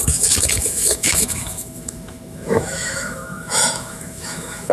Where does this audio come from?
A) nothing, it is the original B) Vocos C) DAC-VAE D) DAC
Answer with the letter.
C